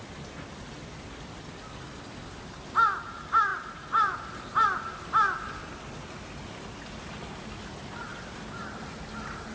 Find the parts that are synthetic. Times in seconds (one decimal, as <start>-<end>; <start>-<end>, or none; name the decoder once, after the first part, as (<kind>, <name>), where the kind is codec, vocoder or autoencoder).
none